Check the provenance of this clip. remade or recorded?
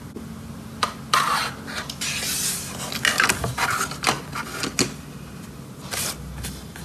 recorded